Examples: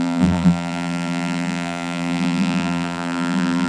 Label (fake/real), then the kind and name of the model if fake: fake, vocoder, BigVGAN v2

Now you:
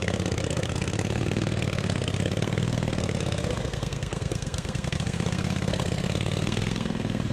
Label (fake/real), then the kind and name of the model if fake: fake, codec, SNAC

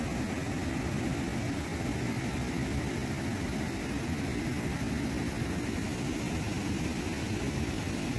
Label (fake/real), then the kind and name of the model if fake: real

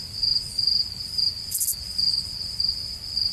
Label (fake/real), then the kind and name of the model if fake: real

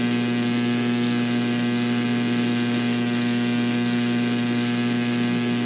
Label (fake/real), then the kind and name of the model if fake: real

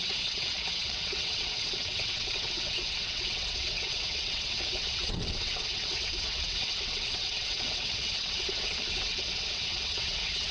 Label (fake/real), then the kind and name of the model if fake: fake, vocoder, WaveNeXt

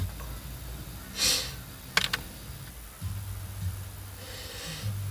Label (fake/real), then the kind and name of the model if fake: real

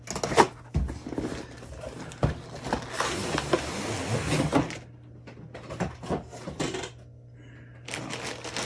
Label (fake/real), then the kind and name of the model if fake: real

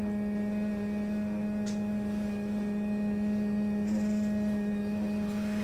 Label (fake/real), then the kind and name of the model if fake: real